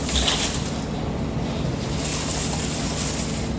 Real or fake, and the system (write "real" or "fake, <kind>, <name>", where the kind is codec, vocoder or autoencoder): real